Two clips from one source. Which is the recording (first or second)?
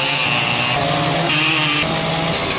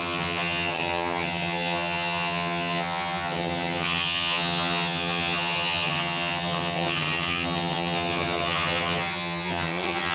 first